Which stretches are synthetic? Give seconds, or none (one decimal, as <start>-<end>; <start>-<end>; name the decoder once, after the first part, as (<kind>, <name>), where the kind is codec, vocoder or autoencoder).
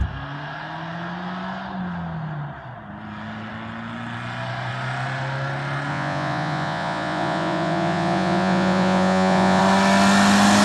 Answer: 5.9-9.6 (vocoder, Vocos)